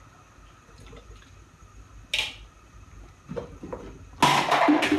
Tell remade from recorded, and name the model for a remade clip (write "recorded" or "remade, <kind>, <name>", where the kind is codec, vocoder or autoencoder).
recorded